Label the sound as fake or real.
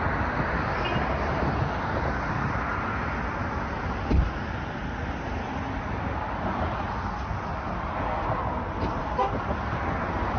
real